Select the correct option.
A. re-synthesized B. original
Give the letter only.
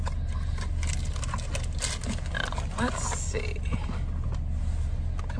B